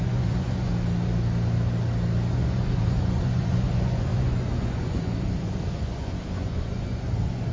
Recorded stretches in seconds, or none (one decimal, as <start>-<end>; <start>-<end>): 0.7-2.3